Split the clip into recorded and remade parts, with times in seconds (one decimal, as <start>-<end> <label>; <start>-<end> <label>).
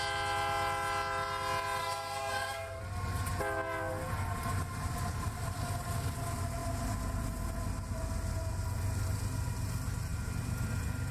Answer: 0.0-1.8 recorded; 1.8-2.8 remade; 2.8-11.1 recorded